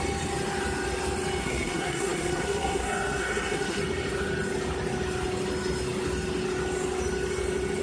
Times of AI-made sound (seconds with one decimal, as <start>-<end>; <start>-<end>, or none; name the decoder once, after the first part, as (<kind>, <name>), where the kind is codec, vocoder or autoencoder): 1.4-3.8 (codec, SNAC)